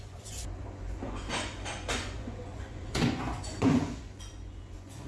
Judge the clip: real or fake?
fake